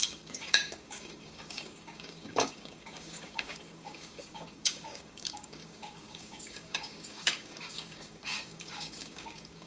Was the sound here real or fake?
fake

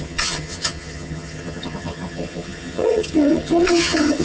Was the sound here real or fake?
fake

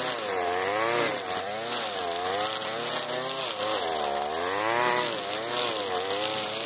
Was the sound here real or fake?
real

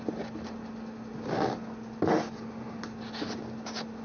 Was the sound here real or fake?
real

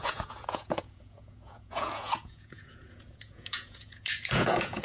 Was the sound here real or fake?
fake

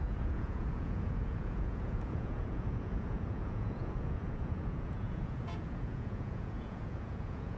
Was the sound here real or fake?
fake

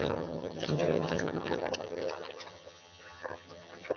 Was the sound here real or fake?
fake